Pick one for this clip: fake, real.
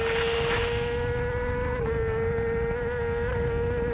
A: real